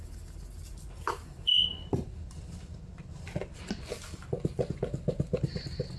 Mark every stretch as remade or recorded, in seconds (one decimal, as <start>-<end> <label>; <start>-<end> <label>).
0.0-6.0 recorded